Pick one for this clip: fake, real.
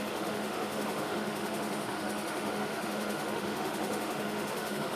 fake